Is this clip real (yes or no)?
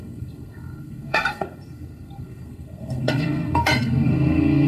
no